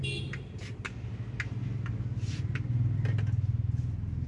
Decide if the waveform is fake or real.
real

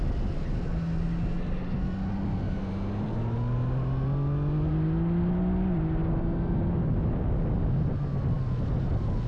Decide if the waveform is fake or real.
real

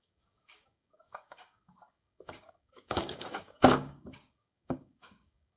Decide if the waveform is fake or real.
fake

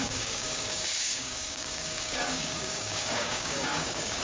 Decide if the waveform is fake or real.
fake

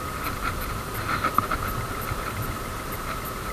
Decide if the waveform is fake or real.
real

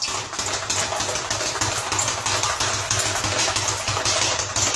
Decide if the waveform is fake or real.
real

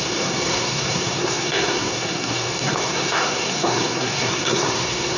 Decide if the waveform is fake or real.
fake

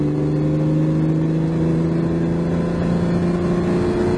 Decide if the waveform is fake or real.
real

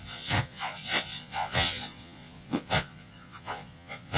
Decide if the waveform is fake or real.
fake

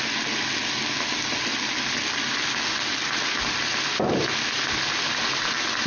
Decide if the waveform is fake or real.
real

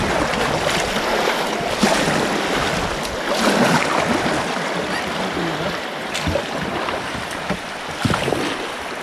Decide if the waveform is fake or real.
real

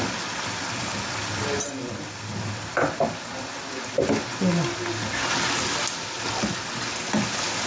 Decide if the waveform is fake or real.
real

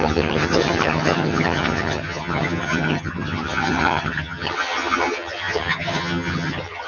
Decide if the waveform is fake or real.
fake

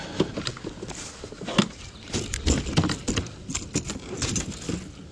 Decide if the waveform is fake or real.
real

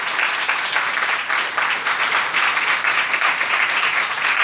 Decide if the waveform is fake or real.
real